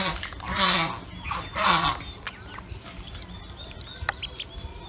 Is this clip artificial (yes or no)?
no